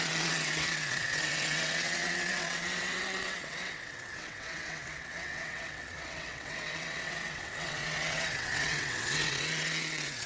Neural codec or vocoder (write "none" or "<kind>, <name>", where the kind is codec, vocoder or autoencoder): vocoder, WaveNeXt